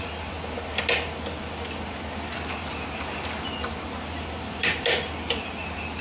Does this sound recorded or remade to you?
recorded